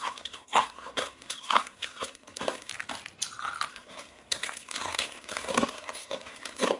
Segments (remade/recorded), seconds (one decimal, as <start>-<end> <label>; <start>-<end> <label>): 0.0-2.7 remade; 2.7-3.7 recorded; 3.7-6.8 remade